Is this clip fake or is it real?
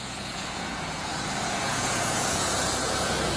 fake